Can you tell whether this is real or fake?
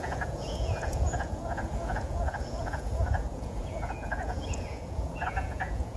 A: fake